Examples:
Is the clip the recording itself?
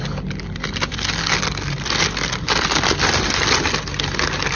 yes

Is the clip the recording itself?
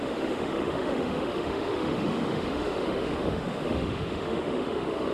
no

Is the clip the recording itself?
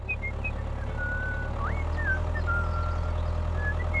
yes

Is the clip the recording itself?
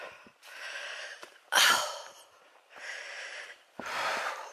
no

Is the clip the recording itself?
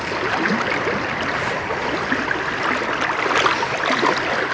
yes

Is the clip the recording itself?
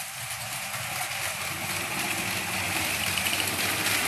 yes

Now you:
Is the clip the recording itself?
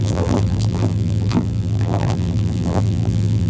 no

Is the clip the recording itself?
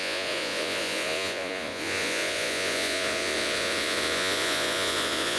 no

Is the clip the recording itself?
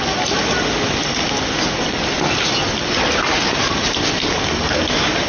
yes